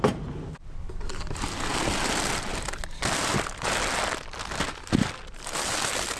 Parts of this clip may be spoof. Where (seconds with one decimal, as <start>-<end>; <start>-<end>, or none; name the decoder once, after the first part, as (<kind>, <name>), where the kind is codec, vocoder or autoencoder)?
none